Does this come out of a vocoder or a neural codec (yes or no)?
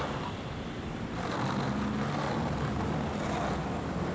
no